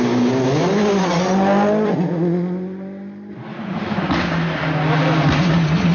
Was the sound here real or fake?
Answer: real